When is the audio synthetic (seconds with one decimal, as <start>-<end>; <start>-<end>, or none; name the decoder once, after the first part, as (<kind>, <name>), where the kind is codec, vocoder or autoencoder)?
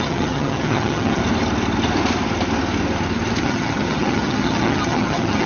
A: 0.0-1.2 (vocoder, HiFi-GAN); 3.4-5.5